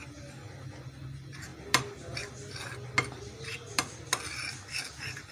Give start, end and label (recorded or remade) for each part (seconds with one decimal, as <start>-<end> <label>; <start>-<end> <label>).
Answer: 0.0-5.3 recorded